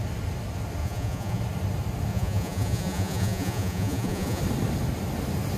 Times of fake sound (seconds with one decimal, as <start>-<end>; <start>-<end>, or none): 0.8-1.4; 2.1-4.4